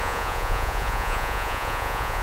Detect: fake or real fake